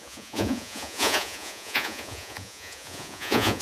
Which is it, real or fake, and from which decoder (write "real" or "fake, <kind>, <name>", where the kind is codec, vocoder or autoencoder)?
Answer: fake, vocoder, Vocos